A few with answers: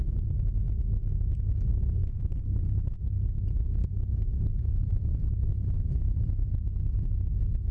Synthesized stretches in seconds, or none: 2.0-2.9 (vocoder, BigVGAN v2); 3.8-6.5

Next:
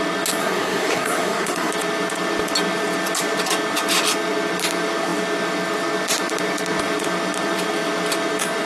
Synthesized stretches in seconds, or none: 0.4-1.7 (codec, SNAC)

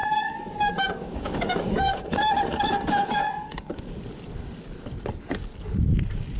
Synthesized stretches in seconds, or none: 0.0-3.8 (codec, DAC)

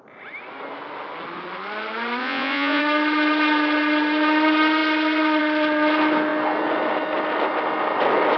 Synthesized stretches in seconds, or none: 2.2-2.8 (vocoder, Vocos)

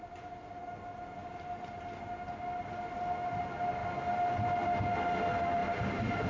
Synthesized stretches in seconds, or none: 1.2-2.1 (vocoder, BigVGAN v2); 5.6-6.3

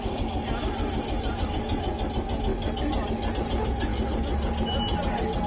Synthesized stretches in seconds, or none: none

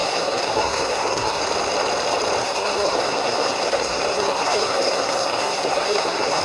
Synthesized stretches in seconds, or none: 0.0-1.4 (codec, SNAC); 2.4-6.4